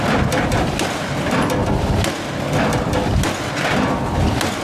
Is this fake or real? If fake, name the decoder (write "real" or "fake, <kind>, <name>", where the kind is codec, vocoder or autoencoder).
real